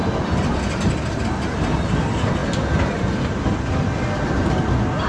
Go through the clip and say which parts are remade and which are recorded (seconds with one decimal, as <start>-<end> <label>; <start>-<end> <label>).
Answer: 0.0-5.1 recorded